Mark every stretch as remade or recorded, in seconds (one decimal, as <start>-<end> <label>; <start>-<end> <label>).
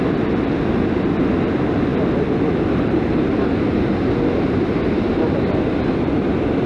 0.0-1.9 recorded; 1.9-3.5 remade; 3.5-6.7 recorded